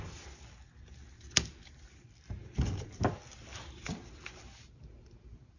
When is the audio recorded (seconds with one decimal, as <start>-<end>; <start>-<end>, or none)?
0.0-5.6